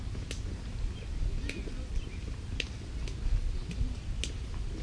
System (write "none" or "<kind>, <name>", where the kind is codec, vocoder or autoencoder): none